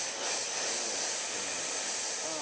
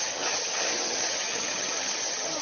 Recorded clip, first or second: first